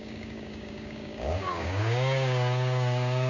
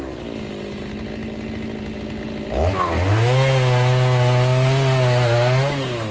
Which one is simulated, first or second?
first